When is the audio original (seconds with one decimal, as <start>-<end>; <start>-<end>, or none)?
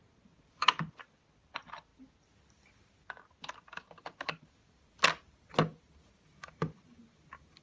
0.0-6.5; 7.0-7.6